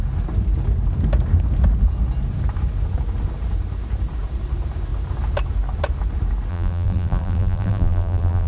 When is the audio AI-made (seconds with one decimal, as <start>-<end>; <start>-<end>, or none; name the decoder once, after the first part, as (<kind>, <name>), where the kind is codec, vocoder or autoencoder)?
6.5-8.5 (vocoder, BigVGAN v2)